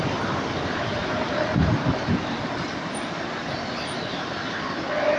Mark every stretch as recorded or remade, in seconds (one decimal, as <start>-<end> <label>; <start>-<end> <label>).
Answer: 0.0-5.2 recorded

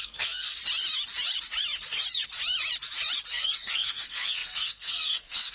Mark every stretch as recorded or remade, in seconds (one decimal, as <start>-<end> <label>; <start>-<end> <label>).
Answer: 0.0-0.6 remade; 0.6-3.3 recorded; 3.3-5.5 remade

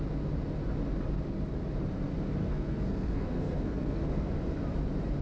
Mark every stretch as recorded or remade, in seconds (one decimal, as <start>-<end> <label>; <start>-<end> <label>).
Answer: 0.0-2.4 recorded; 2.4-4.3 remade; 4.3-5.2 recorded

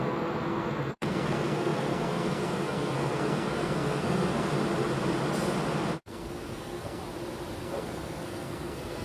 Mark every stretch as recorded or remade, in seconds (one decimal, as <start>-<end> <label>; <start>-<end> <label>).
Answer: 0.0-4.5 remade; 4.5-6.0 recorded; 6.0-7.0 remade; 7.0-7.6 recorded; 7.6-9.0 remade